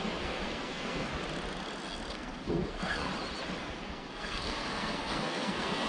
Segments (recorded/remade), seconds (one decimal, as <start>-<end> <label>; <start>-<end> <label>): 0.0-1.1 remade; 1.1-2.1 recorded; 2.1-3.1 remade; 3.1-3.6 recorded; 3.6-5.9 remade